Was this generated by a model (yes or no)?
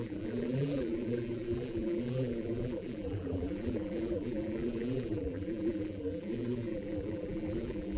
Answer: yes